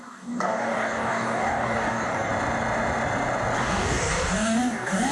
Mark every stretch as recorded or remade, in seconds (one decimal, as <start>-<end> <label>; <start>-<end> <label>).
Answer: 0.0-2.3 remade; 2.3-3.6 recorded; 3.6-5.1 remade